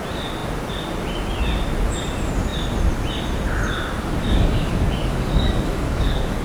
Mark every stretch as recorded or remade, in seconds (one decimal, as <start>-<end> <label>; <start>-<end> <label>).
0.0-4.2 recorded; 4.2-6.4 remade